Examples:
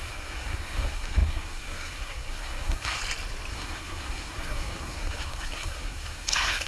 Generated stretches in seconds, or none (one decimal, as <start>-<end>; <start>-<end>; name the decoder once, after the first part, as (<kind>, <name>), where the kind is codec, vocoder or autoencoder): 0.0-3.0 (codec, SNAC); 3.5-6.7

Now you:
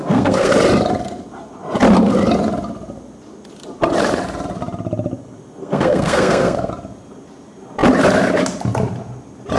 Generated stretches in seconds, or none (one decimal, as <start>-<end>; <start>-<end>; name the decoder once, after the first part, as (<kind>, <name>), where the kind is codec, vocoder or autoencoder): 0.0-0.5 (codec, SNAC); 5.6-6.7

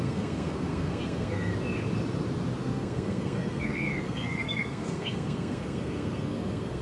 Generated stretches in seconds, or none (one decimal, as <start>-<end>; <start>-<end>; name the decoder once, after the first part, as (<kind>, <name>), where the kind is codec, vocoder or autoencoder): 0.0-1.5 (codec, SNAC); 2.6-6.8

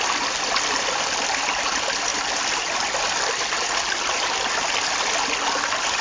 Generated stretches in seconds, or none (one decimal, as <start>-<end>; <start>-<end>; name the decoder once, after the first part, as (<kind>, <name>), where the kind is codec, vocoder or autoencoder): 2.1-4.7 (vocoder, BigVGAN v2)

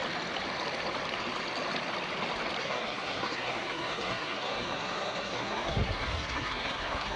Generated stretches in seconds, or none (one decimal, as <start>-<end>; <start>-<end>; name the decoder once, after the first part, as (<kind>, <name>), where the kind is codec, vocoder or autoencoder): 2.6-7.2 (codec, SNAC)

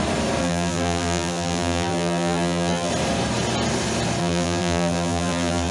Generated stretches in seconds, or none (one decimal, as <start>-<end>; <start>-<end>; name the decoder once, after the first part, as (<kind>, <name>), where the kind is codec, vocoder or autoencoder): 0.4-2.9 (vocoder, BigVGAN v2); 4.2-5.7